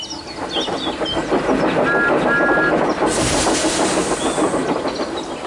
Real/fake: real